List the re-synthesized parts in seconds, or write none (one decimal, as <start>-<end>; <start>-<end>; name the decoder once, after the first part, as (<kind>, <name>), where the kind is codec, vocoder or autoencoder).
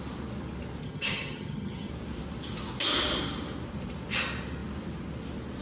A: 0.8-1.9 (vocoder, HiFi-GAN)